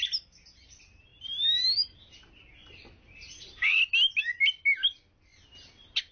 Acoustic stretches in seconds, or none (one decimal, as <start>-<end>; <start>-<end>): 0.0-6.1